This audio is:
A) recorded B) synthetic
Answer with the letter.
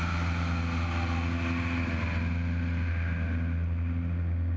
A